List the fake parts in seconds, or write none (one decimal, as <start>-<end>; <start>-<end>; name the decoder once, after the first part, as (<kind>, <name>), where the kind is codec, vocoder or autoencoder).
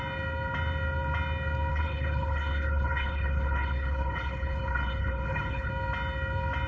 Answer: 1.7-5.7 (codec, HILCodec)